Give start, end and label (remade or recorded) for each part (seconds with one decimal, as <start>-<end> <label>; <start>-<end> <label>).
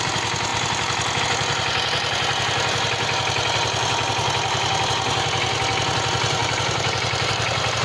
0.0-6.4 recorded; 6.4-7.8 remade